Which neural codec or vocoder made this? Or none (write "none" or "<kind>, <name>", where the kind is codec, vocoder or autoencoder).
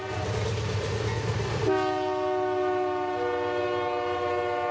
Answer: none